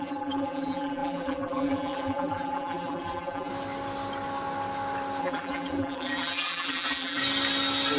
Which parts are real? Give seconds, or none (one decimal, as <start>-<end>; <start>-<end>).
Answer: 3.5-5.2; 7.2-8.0